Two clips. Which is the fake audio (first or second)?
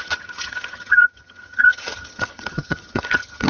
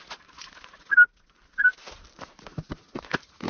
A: first